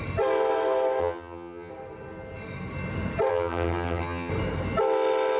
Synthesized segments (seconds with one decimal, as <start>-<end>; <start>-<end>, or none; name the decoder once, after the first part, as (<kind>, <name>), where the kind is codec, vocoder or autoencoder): 1.0-1.7 (vocoder, HiFi-GAN); 3.3-4.3